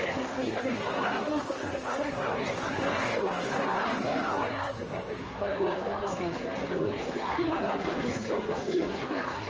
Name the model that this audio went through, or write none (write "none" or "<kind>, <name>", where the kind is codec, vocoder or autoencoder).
codec, SNAC